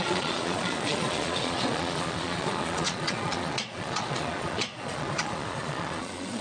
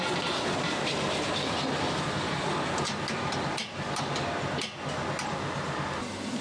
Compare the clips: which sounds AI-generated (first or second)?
first